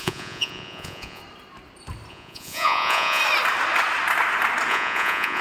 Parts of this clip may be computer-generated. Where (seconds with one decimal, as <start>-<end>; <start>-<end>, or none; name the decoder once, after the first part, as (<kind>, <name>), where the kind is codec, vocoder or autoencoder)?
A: 0.0-1.2 (vocoder, Vocos); 2.1-3.2; 4.7-5.4